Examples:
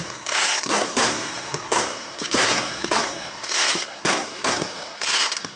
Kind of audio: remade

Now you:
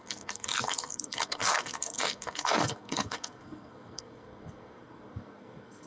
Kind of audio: remade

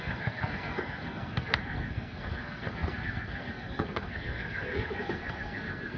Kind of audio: remade